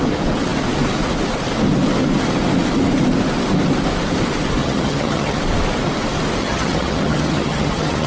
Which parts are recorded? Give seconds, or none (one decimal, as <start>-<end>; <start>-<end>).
0.0-4.6; 5.4-6.4